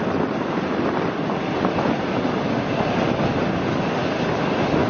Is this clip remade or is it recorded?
recorded